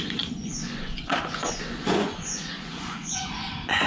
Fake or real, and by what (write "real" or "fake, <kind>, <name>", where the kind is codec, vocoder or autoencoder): fake, vocoder, Vocos